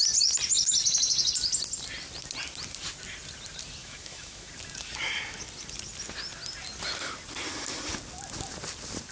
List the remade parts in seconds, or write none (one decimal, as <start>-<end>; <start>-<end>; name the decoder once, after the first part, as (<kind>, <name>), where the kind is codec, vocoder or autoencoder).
3.8-4.5 (autoencoder, DAC-VAE)